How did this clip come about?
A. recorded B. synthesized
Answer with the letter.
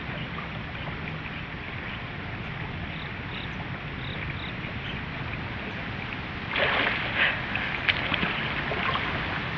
A